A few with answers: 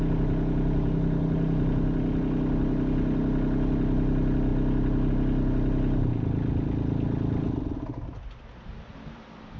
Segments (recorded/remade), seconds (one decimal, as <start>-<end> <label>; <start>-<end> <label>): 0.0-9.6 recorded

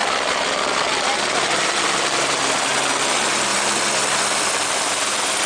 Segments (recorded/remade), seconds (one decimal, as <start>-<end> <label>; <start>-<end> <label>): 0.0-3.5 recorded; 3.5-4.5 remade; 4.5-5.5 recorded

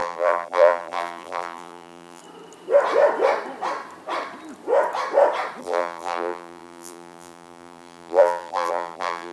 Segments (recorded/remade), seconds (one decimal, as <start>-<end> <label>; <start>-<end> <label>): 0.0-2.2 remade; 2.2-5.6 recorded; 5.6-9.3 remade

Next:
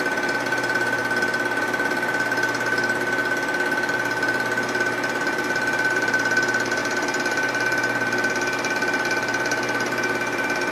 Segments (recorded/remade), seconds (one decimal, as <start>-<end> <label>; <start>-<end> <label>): 0.0-1.0 remade; 1.0-1.6 recorded; 1.6-3.2 remade; 3.2-3.9 recorded; 3.9-10.7 remade